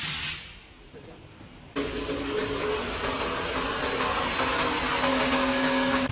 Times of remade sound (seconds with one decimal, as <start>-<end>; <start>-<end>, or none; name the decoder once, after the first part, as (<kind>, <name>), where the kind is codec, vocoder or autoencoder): 5.1-6.1 (codec, DAC)